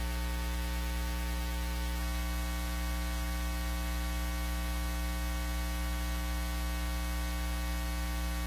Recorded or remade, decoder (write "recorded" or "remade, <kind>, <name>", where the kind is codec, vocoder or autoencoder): recorded